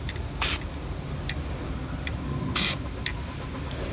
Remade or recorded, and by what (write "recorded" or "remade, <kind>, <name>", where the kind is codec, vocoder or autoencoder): recorded